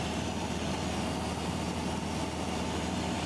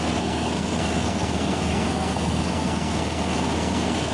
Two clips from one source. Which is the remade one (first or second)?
second